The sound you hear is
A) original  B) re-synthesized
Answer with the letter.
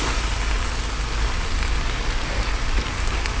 A